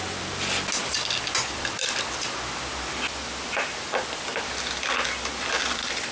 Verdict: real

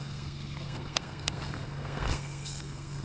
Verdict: fake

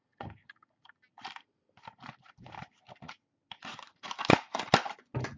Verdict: real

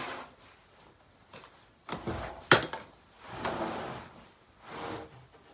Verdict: real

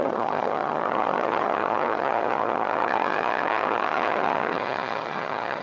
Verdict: fake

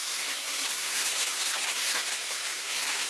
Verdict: fake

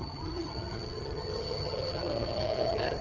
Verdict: fake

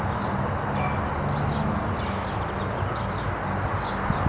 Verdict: real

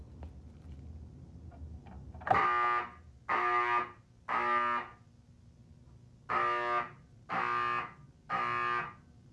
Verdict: real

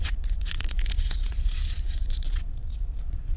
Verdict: fake